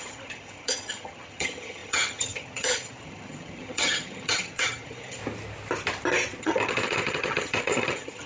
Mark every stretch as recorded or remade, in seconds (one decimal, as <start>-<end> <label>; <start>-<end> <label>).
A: 0.0-5.2 remade; 5.2-6.4 recorded; 6.4-8.3 remade